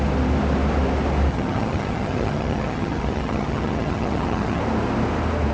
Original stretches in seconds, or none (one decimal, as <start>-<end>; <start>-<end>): 0.0-1.3; 4.6-5.5